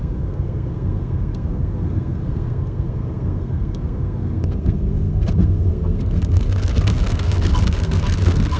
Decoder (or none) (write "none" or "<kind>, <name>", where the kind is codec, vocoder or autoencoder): codec, SNAC